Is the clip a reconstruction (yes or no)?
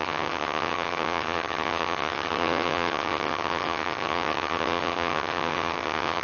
yes